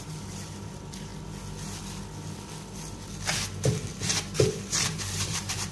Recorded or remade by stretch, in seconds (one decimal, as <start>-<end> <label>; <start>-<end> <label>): 0.0-1.1 remade; 1.1-4.5 recorded; 4.5-5.7 remade